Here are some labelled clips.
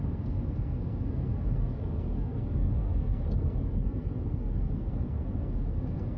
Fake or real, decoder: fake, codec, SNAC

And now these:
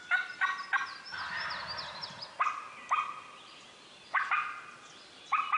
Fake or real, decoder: real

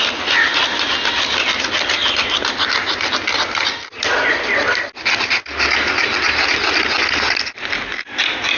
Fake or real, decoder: real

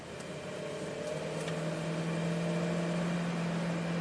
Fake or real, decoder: real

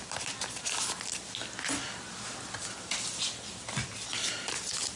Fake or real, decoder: real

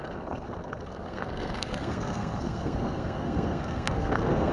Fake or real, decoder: fake, codec, SNAC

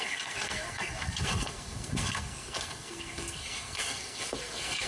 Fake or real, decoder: fake, codec, SNAC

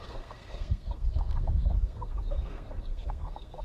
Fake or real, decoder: fake, codec, SNAC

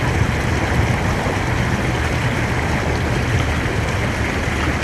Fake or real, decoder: real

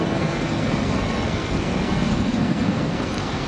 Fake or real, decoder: fake, codec, SNAC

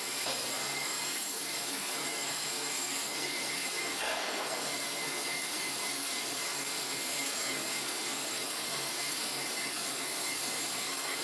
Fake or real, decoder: fake, codec, SNAC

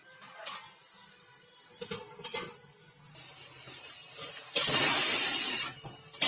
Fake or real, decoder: real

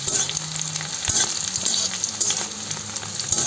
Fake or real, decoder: real